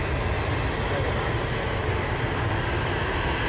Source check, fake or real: real